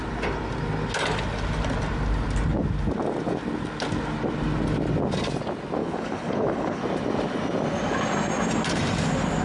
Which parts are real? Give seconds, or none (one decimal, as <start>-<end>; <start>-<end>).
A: 0.0-5.8; 6.8-9.4